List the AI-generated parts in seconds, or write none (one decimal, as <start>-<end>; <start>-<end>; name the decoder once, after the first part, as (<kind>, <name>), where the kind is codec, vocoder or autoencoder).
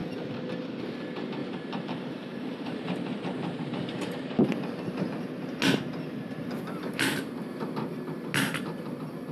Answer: 1.4-5.3 (vocoder, BigVGAN v2)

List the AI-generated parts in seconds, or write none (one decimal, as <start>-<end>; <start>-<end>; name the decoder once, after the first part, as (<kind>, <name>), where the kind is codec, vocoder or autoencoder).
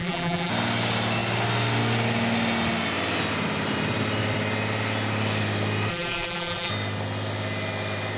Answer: 0.0-0.5 (vocoder, BigVGAN v2); 5.9-6.7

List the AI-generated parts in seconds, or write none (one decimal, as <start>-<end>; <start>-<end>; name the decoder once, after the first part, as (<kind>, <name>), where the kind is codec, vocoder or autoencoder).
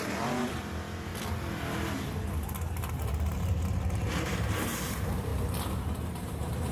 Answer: 0.0-1.1 (vocoder, BigVGAN v2); 2.9-5.3; 6.0-6.7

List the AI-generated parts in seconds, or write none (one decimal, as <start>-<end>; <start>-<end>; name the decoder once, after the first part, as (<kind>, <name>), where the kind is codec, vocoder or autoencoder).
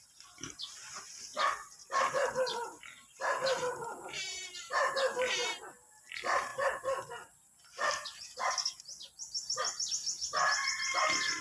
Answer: 1.8-5.5 (vocoder, BigVGAN v2)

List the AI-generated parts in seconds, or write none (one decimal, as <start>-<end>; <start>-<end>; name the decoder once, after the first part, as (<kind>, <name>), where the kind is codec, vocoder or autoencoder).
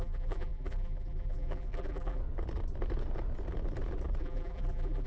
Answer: 0.0-2.2 (vocoder, BigVGAN v2); 4.2-5.1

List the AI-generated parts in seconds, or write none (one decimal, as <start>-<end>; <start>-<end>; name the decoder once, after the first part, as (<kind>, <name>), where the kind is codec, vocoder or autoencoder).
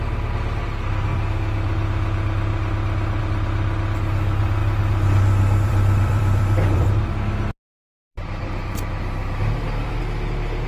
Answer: 4.6-7.1 (vocoder, BigVGAN v2); 7.7-10.0